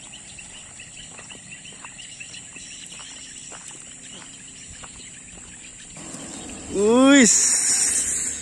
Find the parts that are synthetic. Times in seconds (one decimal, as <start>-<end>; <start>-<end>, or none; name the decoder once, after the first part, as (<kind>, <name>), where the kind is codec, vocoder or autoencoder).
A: none